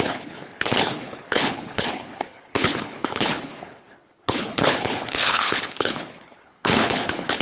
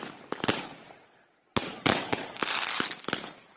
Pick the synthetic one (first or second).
first